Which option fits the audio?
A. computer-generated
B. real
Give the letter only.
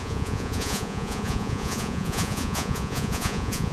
A